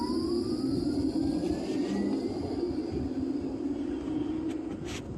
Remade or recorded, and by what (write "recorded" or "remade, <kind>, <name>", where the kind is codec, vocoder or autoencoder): recorded